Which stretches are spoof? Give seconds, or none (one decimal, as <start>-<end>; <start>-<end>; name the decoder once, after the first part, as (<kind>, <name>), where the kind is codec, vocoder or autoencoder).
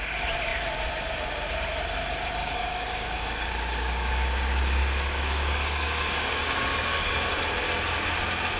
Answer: 2.4-7.4 (codec, DAC)